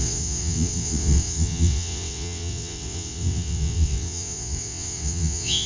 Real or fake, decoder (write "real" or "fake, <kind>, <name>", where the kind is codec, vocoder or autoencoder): fake, vocoder, WaveNeXt